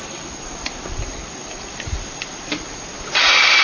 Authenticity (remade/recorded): remade